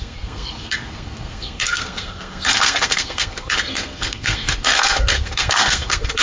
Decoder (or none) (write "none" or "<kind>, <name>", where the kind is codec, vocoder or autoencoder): codec, SNAC